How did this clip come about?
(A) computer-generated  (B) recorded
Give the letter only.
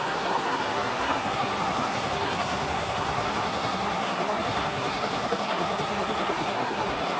A